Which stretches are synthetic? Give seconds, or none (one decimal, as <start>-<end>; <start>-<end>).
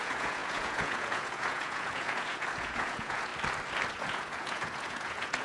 0.0-3.3; 3.9-5.4